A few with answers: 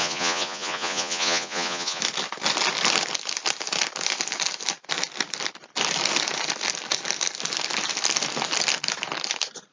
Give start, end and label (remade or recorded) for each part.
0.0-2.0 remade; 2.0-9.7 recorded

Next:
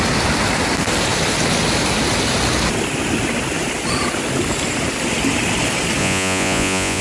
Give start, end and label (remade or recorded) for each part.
0.0-6.0 recorded; 6.0-7.0 remade

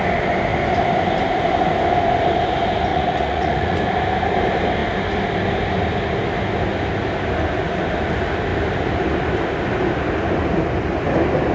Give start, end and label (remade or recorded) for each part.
0.0-2.9 recorded; 2.9-3.8 remade; 3.8-11.5 recorded

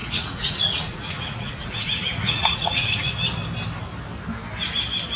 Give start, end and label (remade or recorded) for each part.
0.0-3.1 remade; 3.1-5.2 recorded

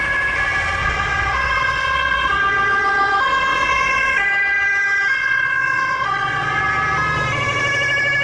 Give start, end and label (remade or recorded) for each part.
0.0-0.8 recorded; 0.8-2.4 remade; 2.4-3.5 recorded; 3.5-4.2 remade; 4.2-5.2 recorded; 5.2-6.6 remade; 6.6-8.2 recorded